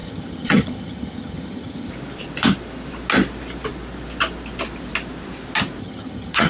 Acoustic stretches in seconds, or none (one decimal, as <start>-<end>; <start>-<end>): 1.9-5.8